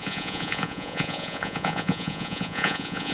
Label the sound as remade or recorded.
remade